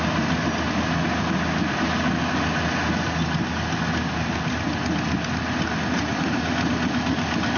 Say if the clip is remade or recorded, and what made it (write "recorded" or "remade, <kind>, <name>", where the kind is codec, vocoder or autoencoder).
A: recorded